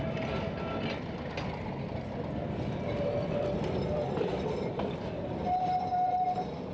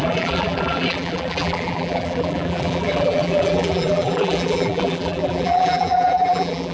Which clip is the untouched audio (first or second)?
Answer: first